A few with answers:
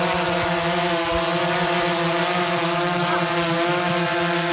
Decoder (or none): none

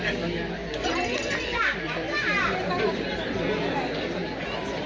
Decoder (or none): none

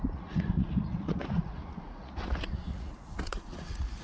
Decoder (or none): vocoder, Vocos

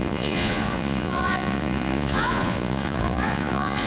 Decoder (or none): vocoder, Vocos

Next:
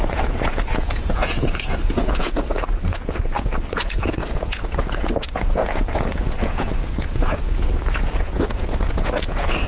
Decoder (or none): vocoder, Vocos